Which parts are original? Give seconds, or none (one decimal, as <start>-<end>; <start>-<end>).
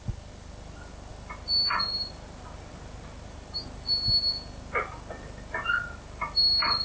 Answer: 0.0-6.8